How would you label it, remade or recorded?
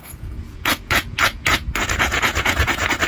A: remade